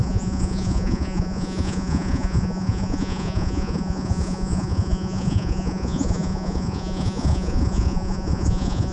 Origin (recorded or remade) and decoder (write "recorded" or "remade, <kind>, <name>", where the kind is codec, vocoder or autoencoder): remade, vocoder, Vocos